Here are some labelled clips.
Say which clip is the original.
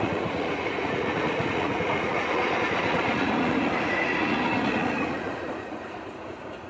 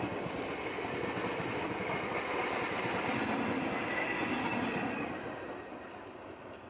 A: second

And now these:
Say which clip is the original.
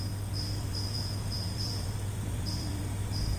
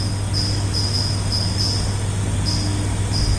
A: second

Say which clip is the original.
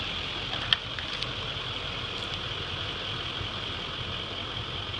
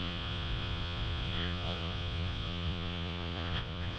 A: first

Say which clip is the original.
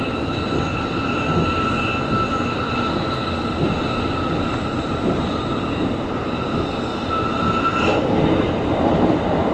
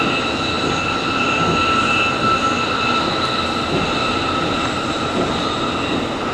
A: second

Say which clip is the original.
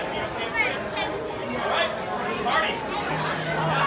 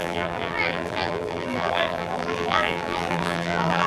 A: first